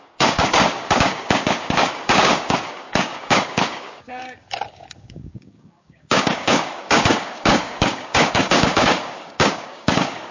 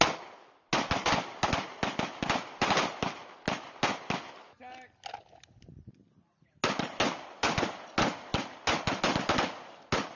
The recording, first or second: second